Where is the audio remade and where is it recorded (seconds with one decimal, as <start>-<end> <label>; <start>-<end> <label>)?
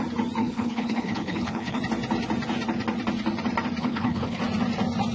0.0-0.4 recorded; 0.4-1.8 remade; 1.8-3.8 recorded; 3.8-4.4 remade; 4.4-5.1 recorded